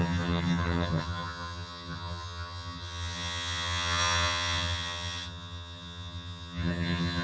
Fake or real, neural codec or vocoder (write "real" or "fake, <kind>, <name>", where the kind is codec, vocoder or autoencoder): fake, vocoder, HiFi-GAN